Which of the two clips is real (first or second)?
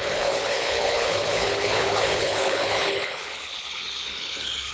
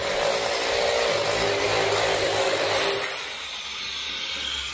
second